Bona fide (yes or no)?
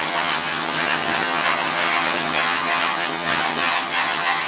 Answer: no